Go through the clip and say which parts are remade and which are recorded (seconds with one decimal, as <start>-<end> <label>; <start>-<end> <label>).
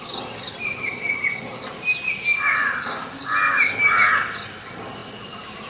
0.0-5.7 recorded